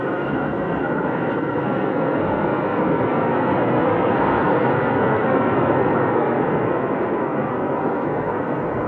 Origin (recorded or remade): remade